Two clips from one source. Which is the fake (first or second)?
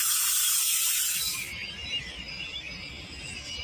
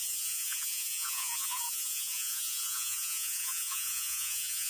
second